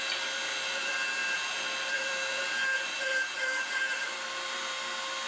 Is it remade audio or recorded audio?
remade